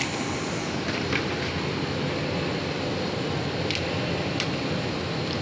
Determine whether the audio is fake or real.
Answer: real